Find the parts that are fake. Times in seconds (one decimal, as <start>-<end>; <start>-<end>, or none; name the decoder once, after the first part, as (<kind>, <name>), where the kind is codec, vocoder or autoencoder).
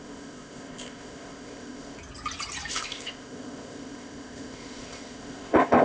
0.0-2.0 (codec, ZipCodec); 2.7-5.8